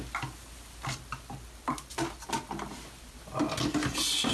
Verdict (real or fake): real